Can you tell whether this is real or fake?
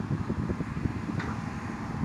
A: real